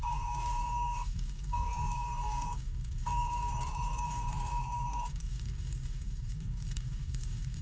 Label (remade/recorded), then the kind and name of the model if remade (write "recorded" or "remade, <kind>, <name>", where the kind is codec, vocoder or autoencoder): remade, codec, DAC